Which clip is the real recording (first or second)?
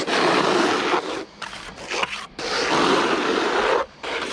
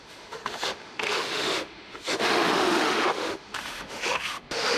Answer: first